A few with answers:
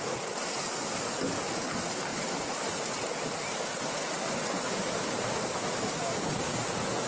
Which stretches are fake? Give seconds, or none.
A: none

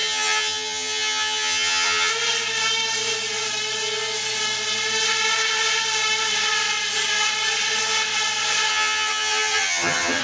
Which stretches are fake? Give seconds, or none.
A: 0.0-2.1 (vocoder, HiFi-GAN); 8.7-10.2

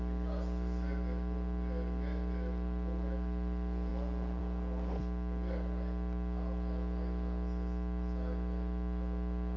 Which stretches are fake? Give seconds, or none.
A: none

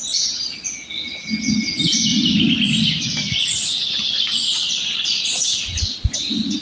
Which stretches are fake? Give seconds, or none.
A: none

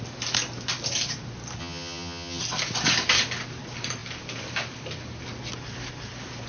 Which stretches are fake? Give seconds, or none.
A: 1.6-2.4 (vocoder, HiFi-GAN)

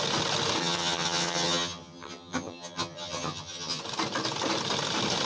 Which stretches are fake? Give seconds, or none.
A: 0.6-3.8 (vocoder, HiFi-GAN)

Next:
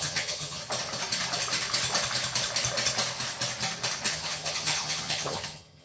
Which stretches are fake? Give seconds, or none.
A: 0.0-0.6 (vocoder, HiFi-GAN); 4.1-5.8

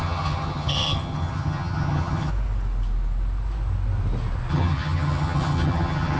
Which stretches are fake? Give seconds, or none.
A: 0.0-2.3 (vocoder, HiFi-GAN); 4.5-6.2